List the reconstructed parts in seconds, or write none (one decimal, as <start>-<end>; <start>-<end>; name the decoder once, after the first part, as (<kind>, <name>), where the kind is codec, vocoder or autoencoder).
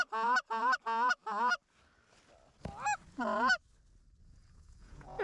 4.2-5.2 (vocoder, Vocos)